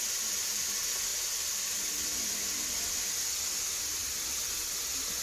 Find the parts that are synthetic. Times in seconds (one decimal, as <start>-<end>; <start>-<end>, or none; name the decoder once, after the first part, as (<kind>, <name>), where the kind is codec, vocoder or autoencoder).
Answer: none